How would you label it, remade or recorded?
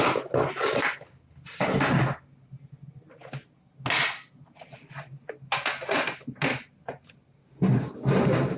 recorded